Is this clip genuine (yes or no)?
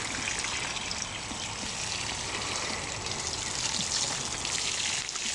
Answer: yes